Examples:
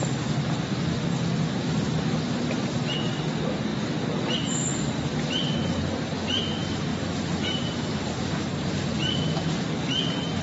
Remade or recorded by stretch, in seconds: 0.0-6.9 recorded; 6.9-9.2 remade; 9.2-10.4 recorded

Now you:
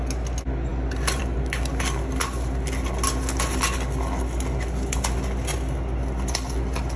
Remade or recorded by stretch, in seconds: 0.0-7.0 recorded

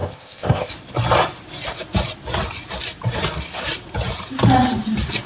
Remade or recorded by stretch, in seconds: 0.0-0.7 remade; 0.7-5.3 recorded

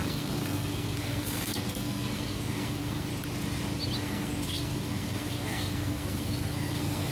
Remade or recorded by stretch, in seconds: 0.0-3.1 remade; 3.1-4.0 recorded; 4.0-7.1 remade